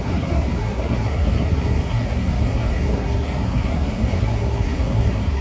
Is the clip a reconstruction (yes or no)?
yes